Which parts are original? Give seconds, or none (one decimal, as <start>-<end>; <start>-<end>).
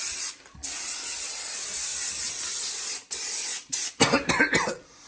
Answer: 0.0-5.1